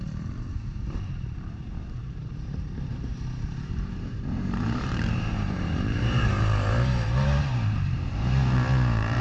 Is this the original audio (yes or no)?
no